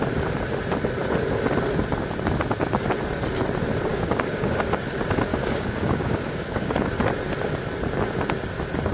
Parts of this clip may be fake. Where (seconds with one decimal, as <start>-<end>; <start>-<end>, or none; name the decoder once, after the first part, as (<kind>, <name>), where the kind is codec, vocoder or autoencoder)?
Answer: 3.9-4.6 (codec, DAC); 5.3-6.9